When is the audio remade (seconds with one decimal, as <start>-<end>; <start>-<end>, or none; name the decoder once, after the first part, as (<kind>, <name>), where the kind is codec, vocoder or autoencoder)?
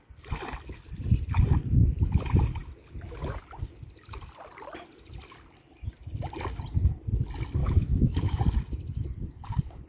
7.6-8.4 (autoencoder, DAC-VAE)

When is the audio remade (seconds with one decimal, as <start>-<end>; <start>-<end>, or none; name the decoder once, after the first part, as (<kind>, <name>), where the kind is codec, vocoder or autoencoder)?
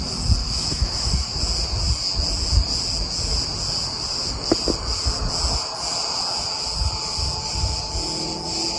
0.4-1.4 (autoencoder, DAC-VAE)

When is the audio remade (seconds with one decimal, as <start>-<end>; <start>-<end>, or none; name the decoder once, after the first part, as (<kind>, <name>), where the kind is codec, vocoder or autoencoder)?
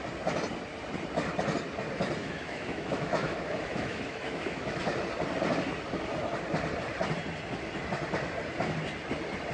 2.2-4.8 (autoencoder, DAC-VAE)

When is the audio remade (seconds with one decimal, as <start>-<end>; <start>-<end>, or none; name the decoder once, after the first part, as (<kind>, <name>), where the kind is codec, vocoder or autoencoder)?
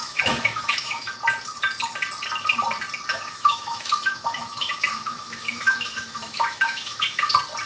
0.0-1.1 (autoencoder, DAC-VAE); 3.1-7.3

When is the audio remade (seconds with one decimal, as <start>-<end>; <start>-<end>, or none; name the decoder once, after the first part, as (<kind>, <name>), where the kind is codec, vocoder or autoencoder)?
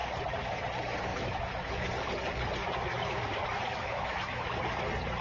1.1-1.9 (autoencoder, DAC-VAE); 2.6-4.6